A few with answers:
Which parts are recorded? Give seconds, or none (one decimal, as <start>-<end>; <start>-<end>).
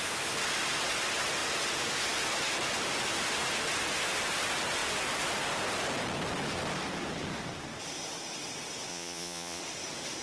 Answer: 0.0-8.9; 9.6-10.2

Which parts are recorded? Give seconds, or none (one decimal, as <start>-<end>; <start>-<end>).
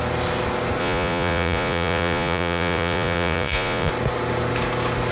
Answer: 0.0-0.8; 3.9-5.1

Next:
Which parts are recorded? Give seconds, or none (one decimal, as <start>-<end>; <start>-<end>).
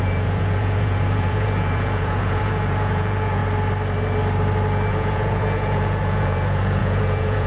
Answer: 3.4-4.9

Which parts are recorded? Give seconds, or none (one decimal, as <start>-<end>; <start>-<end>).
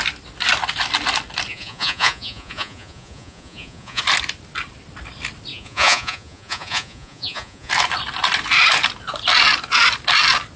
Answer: 0.0-1.5; 4.0-5.5; 7.7-10.6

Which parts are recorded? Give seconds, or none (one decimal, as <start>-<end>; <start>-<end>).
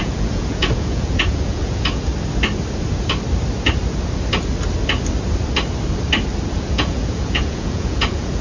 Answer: 2.1-6.5